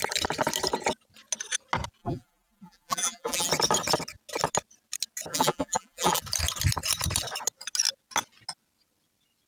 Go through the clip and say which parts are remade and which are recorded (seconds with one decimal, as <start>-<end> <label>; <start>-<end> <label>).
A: 0.0-2.0 recorded; 2.0-3.5 remade; 3.5-5.3 recorded; 5.3-6.2 remade; 6.2-9.5 recorded